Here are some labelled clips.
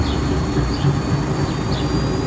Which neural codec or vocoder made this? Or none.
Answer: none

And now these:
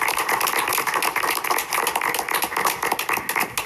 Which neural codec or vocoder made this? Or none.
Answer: none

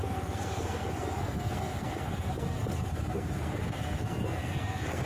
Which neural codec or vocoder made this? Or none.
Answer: codec, SNAC